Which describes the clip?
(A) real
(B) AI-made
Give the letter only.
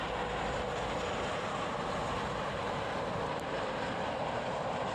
B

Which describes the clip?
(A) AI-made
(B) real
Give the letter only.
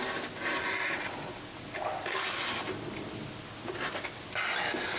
B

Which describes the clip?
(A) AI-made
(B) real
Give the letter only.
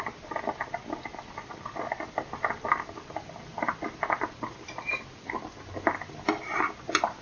B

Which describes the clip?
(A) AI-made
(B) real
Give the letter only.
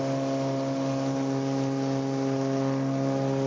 B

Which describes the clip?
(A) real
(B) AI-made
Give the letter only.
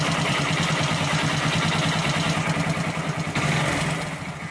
A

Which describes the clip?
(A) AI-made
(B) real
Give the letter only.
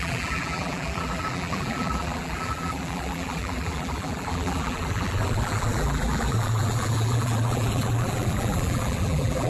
A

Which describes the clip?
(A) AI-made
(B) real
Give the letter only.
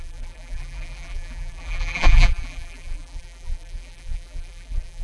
A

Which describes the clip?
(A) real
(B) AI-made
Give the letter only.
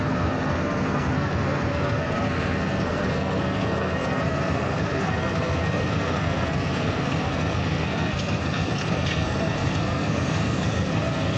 B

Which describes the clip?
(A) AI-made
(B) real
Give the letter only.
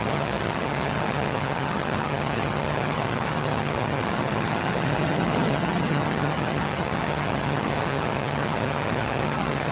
A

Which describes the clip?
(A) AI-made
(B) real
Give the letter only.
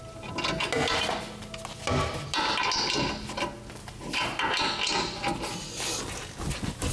B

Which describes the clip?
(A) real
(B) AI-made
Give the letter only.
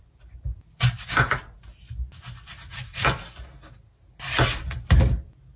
A